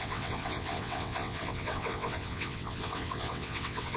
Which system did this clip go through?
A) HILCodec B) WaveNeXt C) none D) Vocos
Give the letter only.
B